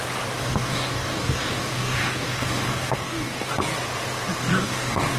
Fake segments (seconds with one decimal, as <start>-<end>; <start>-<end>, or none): 0.4-3.5; 4.4-5.2